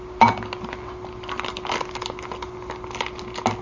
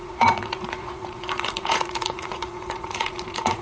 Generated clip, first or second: second